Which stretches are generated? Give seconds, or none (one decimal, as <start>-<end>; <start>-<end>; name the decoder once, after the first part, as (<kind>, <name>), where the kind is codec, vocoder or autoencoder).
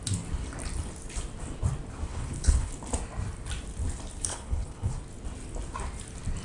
2.1-2.7 (codec, HILCodec); 4.3-4.9